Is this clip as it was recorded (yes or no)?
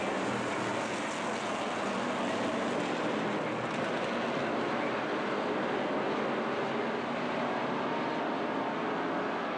yes